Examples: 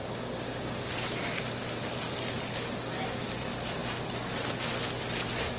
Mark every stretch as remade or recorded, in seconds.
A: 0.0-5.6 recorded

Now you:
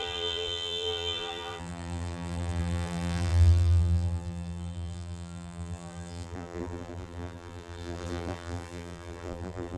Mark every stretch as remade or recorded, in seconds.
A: 0.0-9.8 remade

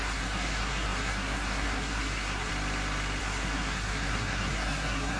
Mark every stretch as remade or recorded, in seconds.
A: 0.0-2.5 remade; 2.5-3.2 recorded; 3.2-5.2 remade

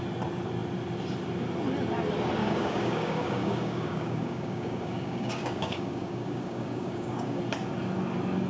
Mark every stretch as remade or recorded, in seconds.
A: 0.0-2.4 recorded; 2.4-7.4 remade; 7.4-8.5 recorded

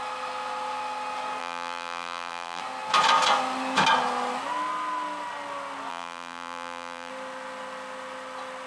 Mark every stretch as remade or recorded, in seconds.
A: 0.0-1.4 recorded; 1.4-2.6 remade; 2.6-5.9 recorded; 5.9-7.1 remade; 7.1-8.7 recorded

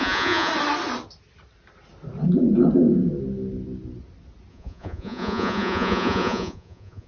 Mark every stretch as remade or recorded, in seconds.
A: 0.0-0.5 remade; 0.5-4.5 recorded; 4.5-7.1 remade